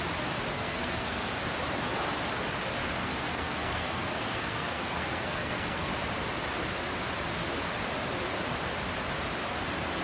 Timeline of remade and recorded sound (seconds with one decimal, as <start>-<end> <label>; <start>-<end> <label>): 0.0-0.5 recorded; 0.5-1.3 remade; 1.3-3.0 recorded; 3.0-5.9 remade; 5.9-10.0 recorded